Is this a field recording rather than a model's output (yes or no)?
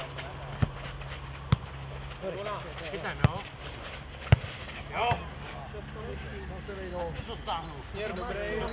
yes